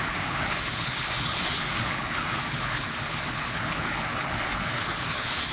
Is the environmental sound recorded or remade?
remade